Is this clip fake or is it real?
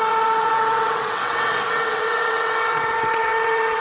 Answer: fake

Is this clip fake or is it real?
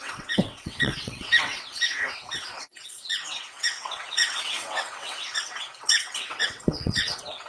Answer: fake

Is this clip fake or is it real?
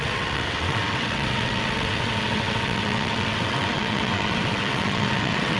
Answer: fake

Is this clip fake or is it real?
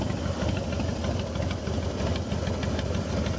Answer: real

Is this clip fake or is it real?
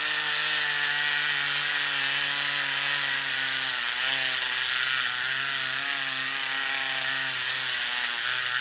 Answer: real